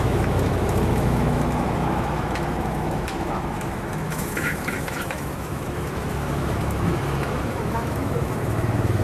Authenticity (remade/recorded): remade